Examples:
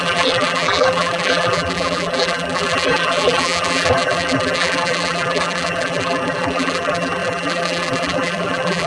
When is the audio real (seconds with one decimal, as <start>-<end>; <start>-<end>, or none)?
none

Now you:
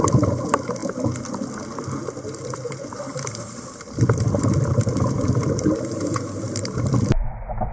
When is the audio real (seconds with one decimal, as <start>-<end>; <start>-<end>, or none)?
0.0-7.7

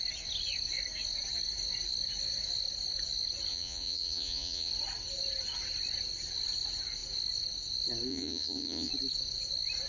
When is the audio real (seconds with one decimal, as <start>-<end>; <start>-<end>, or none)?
0.0-3.5; 4.7-8.1; 8.9-9.9

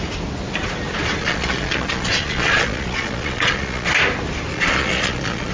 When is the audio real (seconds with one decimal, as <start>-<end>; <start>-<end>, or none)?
0.0-1.2; 3.9-4.5

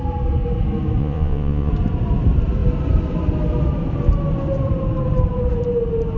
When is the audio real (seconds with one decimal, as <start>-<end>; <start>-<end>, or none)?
0.0-1.0; 1.7-6.2